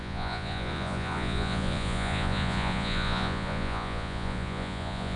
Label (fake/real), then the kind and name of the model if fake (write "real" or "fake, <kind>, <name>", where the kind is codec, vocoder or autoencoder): fake, vocoder, Vocos